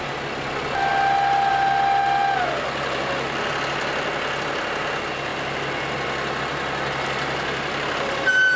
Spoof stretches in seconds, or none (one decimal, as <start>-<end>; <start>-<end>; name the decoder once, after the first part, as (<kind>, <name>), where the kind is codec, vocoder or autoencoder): none